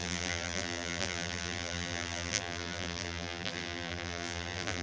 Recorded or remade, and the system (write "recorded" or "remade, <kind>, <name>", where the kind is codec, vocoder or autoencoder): remade, vocoder, BigVGAN v2